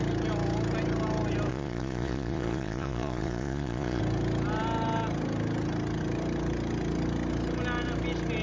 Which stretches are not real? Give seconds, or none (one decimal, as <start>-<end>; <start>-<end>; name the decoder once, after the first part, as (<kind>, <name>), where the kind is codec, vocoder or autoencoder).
1.5-4.0 (vocoder, Vocos)